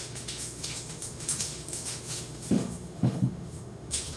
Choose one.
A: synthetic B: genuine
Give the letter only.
A